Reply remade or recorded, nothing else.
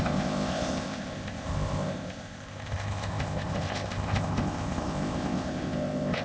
remade